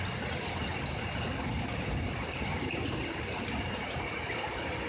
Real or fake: real